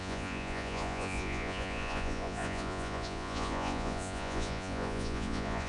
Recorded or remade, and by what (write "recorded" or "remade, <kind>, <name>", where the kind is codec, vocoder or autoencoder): remade, vocoder, Vocos